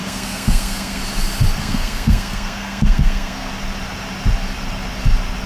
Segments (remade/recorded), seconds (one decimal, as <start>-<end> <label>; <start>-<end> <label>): 0.0-1.0 remade; 1.0-1.6 recorded; 1.6-3.5 remade; 3.5-5.5 recorded